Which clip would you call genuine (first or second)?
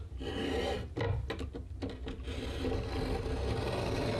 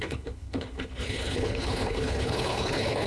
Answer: first